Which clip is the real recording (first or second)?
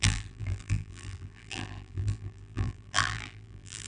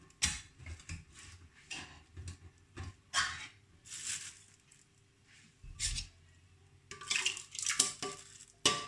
second